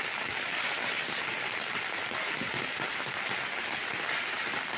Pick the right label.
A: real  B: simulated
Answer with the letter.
A